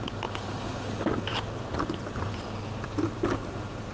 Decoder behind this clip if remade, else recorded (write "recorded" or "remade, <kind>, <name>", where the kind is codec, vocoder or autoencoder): recorded